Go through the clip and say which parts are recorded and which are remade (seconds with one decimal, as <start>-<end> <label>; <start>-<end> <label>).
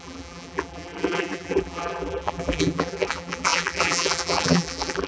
0.0-5.1 remade